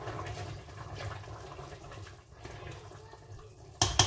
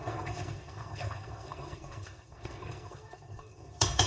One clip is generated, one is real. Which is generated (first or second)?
second